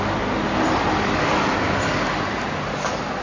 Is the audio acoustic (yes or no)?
yes